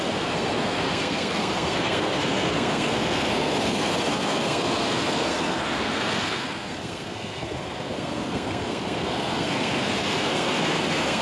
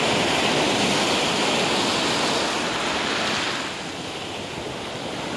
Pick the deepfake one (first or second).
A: first